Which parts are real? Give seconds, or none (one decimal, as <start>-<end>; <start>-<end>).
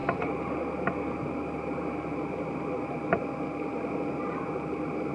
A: 0.0-5.1